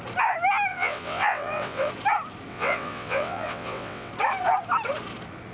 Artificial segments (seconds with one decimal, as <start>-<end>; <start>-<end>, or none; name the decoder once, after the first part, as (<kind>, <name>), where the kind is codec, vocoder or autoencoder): 0.7-1.9 (vocoder, WaveNeXt); 2.5-4.1